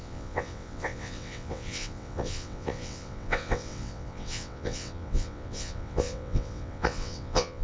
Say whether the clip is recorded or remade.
remade